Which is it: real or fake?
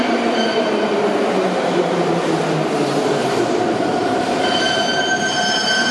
fake